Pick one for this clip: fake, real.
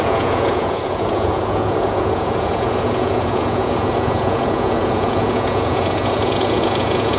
fake